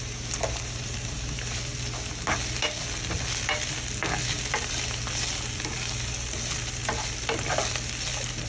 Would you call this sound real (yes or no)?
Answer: yes